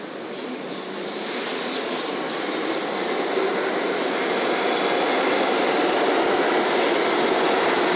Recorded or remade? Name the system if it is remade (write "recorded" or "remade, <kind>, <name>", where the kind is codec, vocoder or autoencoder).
recorded